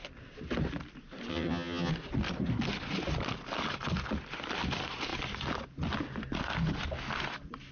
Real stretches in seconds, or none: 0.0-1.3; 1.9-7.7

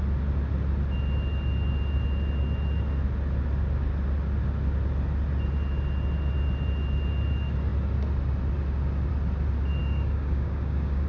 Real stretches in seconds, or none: 0.0-9.8

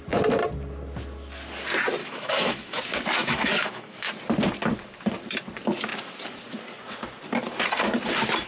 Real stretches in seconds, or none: 0.0-2.0; 2.8-3.2; 4.1-8.5